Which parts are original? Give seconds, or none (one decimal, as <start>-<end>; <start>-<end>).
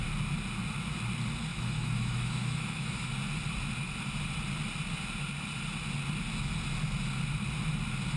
0.0-1.5; 3.1-8.2